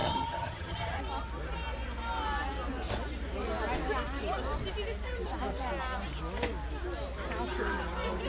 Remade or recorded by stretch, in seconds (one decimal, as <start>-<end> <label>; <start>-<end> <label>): 0.0-1.0 remade; 1.0-8.3 recorded